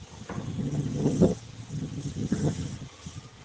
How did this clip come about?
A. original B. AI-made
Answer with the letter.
B